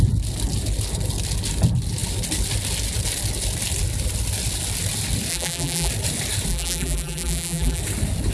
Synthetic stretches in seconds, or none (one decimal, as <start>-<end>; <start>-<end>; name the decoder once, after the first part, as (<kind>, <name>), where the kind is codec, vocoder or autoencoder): 5.3-5.9 (vocoder, BigVGAN v2); 6.5-7.8